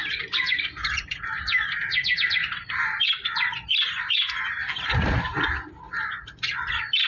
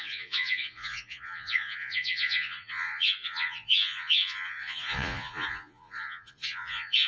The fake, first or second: second